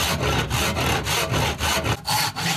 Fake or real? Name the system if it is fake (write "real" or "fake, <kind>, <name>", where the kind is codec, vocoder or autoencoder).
real